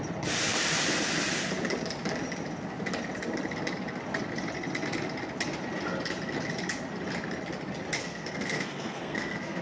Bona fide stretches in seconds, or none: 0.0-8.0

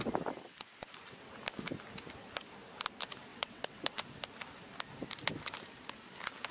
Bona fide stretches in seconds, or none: 0.0-3.3; 4.0-6.5

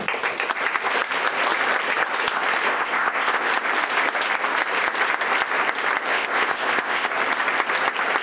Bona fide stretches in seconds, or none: 0.0-2.7; 3.5-6.1; 7.1-8.2